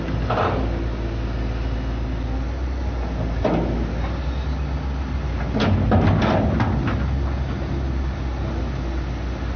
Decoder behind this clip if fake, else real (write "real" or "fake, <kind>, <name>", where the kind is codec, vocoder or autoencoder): real